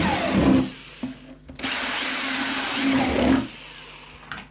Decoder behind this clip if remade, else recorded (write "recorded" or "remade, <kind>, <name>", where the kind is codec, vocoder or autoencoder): recorded